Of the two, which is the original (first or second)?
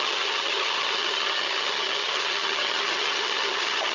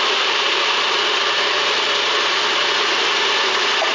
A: second